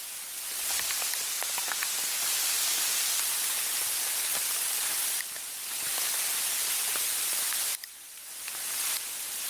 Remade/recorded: recorded